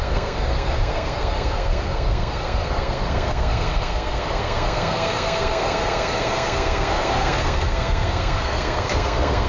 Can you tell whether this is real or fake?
fake